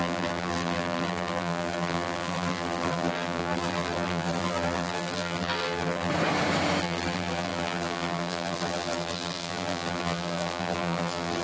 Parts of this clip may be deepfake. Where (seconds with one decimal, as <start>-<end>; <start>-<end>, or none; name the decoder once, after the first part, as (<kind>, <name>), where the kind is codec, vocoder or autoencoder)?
0.0-6.1 (vocoder, BigVGAN v2); 6.8-11.4